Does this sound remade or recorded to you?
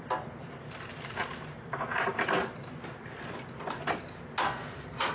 recorded